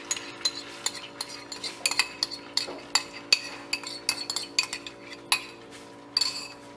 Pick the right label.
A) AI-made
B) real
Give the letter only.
B